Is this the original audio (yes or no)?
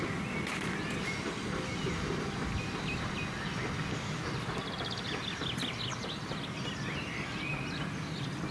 yes